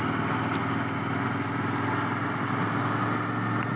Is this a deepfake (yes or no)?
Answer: no